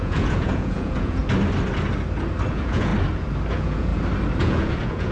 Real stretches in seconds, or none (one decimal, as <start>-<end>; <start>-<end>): 1.2-2.5; 2.9-3.5; 3.9-4.4